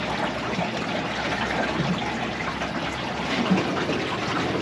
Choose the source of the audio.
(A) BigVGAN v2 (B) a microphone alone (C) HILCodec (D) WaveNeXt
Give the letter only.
B